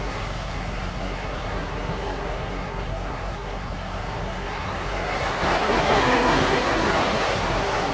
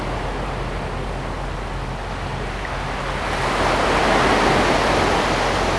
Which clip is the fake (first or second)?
first